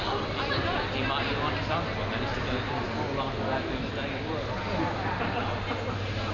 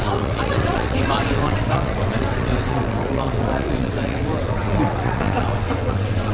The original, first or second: first